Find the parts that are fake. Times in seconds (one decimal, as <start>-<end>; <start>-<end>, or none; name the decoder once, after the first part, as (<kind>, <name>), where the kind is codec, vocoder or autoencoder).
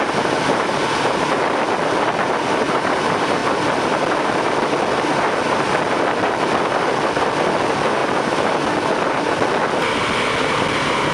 none